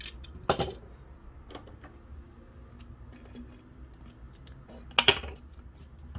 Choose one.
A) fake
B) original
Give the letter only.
B